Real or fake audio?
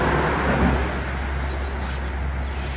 real